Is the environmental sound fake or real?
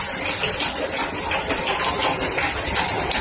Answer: real